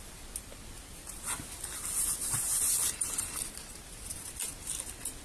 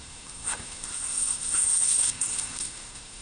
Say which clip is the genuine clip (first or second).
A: first